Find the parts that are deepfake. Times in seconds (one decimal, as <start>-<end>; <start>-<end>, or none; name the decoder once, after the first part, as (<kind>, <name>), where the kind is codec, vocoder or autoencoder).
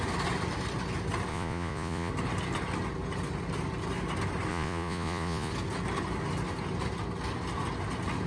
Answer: 1.3-2.1 (vocoder, Vocos); 4.5-5.5